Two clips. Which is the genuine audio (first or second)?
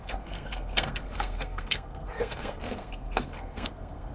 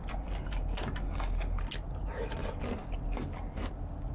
second